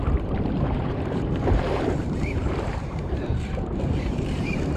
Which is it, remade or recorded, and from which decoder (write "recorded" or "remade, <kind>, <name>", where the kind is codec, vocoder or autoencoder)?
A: remade, vocoder, BigVGAN v2